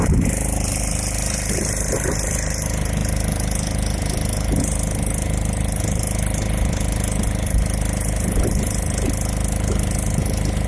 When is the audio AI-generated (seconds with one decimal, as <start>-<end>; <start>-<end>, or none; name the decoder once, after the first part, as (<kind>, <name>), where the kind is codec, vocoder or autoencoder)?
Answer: none